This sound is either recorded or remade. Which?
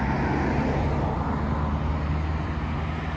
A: recorded